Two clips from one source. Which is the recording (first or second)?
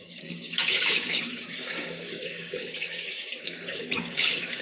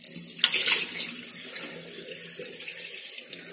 second